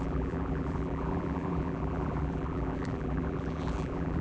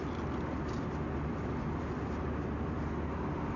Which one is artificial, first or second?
first